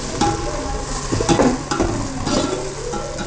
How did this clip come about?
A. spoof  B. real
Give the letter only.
B